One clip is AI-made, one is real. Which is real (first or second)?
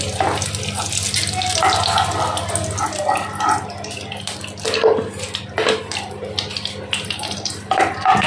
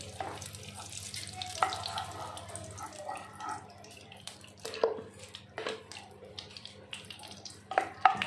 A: first